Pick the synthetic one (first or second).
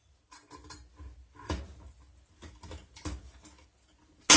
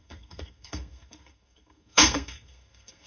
second